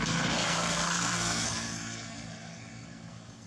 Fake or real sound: fake